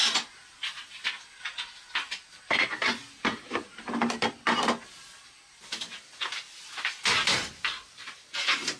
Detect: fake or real real